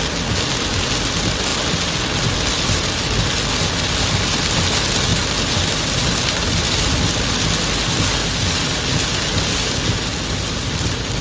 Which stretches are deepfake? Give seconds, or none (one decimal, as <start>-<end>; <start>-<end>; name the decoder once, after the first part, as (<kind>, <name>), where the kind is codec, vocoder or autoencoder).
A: none